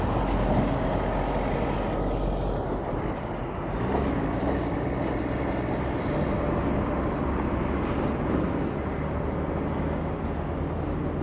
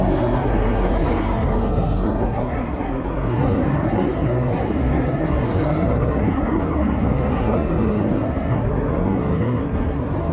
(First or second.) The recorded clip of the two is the first